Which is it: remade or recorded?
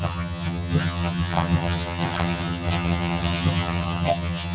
remade